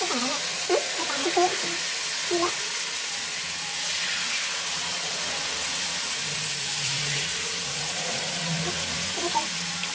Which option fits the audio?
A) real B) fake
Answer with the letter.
B